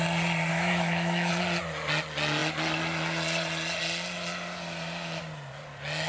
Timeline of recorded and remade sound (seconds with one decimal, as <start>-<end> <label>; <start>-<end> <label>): 0.0-0.5 recorded; 0.5-1.3 remade; 1.3-6.1 recorded